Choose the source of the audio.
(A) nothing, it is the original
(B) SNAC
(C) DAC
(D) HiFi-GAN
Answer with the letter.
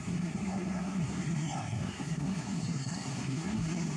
B